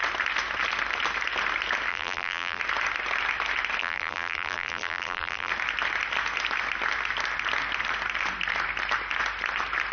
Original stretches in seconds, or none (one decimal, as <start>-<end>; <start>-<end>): 0.0-1.9; 2.6-3.8; 5.5-9.9